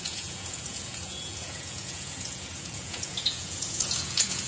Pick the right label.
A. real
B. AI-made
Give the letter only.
B